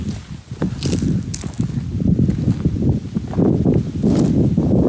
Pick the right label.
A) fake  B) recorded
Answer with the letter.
B